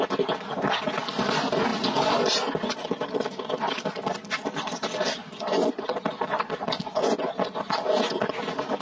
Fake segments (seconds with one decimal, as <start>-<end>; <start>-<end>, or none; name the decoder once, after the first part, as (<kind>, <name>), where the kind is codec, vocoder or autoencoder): 5.2-5.7 (vocoder, Vocos)